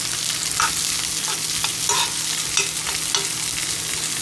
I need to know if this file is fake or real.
real